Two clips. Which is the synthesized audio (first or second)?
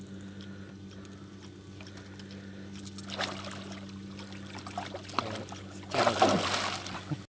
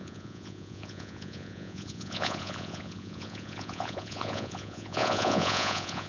second